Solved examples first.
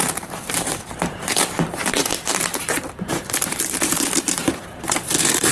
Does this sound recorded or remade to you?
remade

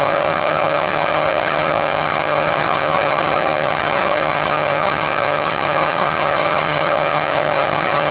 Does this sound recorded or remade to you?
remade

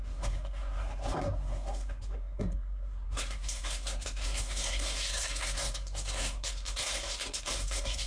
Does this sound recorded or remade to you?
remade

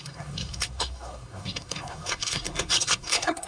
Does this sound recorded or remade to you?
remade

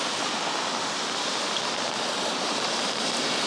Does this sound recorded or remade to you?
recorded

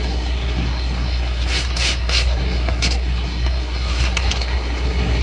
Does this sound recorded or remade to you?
remade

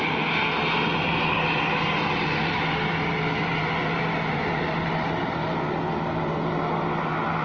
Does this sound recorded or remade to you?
recorded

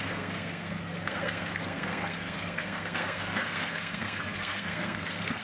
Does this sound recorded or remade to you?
remade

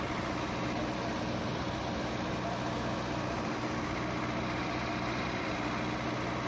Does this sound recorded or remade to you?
recorded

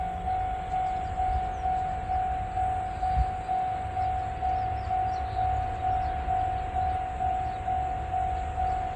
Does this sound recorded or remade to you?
recorded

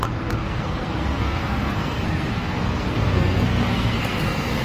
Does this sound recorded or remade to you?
remade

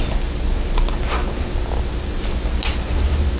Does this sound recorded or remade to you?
recorded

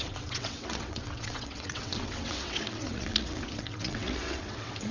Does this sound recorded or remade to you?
remade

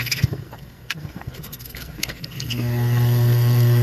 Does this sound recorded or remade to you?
remade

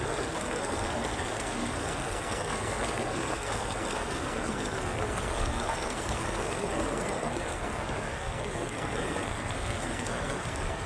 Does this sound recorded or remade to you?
remade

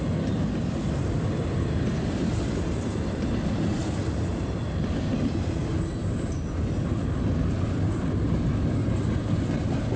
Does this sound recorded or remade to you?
recorded